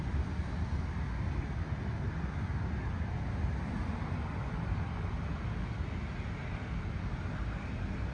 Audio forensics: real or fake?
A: real